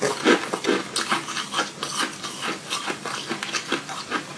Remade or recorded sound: recorded